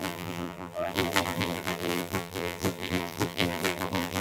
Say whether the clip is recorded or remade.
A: remade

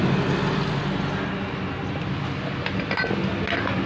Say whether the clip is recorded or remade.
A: recorded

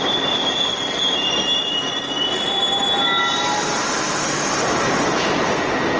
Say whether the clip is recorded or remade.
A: recorded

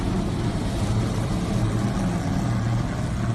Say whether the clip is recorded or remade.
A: recorded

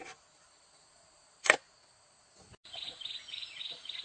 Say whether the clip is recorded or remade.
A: recorded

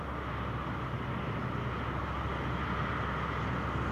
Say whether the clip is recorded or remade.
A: recorded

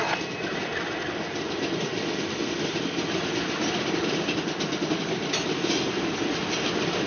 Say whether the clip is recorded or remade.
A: recorded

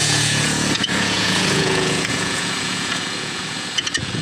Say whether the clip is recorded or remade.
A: remade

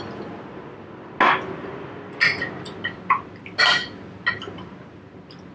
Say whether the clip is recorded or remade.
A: recorded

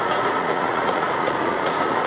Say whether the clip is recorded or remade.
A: remade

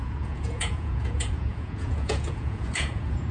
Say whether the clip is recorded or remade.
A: remade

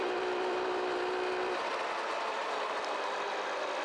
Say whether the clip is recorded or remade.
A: remade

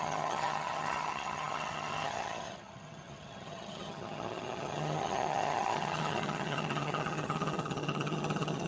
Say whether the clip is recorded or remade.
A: remade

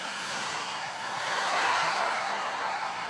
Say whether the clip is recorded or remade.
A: remade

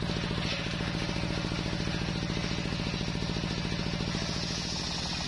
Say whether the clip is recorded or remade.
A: recorded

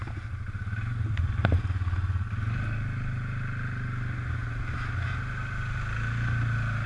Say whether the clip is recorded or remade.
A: recorded